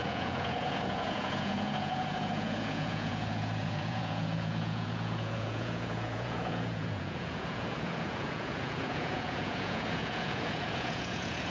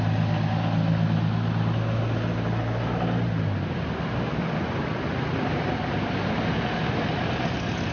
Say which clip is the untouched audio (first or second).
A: second